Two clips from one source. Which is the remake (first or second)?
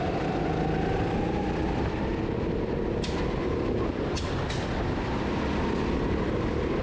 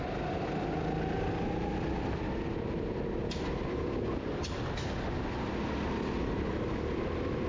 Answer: first